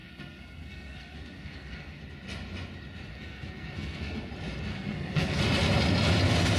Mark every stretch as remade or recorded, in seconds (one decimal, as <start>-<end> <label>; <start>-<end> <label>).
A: 0.0-2.0 remade; 2.0-3.1 recorded; 3.1-4.3 remade; 4.3-4.7 recorded; 4.7-5.4 remade; 5.4-6.6 recorded